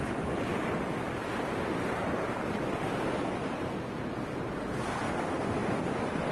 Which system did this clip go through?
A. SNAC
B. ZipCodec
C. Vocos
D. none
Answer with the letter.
D